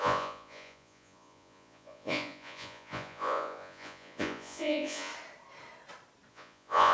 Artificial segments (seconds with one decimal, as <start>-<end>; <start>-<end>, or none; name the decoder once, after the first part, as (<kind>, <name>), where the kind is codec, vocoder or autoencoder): 0.0-5.1 (vocoder, Vocos); 6.3-6.9